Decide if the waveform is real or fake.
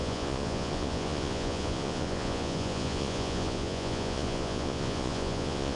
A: fake